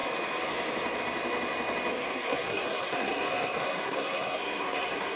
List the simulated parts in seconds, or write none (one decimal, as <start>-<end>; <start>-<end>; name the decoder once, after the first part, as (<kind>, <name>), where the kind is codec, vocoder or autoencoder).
1.9-5.2 (codec, SNAC)